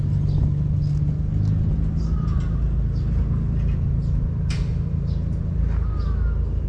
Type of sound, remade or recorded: recorded